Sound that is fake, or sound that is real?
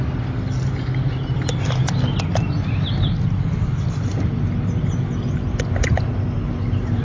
real